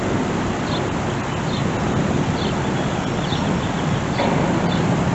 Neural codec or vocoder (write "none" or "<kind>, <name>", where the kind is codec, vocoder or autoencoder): vocoder, BigVGAN v2